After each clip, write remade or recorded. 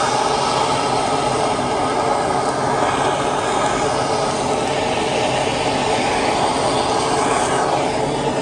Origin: recorded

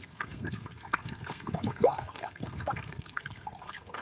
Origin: remade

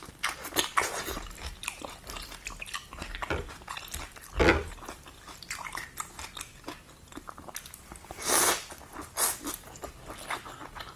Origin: recorded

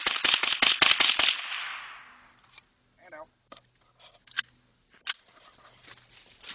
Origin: recorded